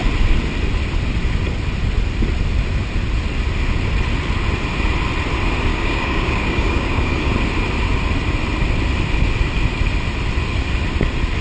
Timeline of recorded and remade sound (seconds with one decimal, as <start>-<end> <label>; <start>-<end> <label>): 0.0-5.7 recorded; 5.7-7.3 remade; 7.3-11.4 recorded